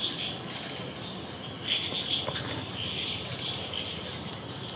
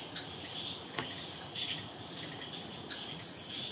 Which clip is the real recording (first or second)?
first